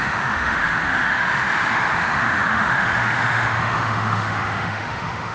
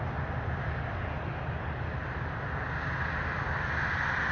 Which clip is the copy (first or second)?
first